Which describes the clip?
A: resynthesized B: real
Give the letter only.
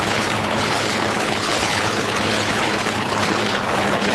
A